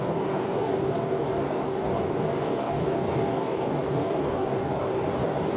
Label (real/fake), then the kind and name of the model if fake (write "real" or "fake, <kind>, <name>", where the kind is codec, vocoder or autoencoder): fake, codec, DAC